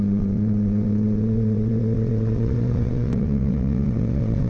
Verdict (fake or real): fake